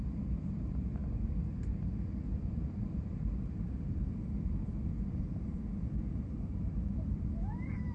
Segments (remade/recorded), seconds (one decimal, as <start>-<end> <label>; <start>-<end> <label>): 0.0-7.9 remade